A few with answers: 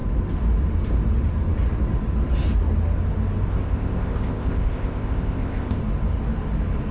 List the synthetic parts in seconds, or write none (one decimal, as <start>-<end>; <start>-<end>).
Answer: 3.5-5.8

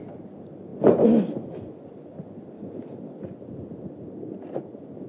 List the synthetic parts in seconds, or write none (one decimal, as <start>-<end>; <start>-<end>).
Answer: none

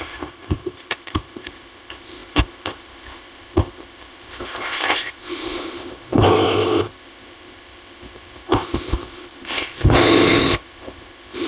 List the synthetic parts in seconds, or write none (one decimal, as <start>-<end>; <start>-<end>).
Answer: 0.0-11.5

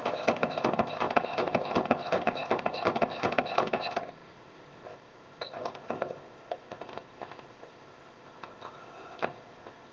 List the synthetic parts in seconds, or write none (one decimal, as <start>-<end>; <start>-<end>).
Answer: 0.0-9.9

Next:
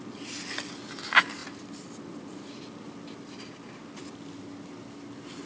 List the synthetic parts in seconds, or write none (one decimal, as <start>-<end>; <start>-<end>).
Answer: none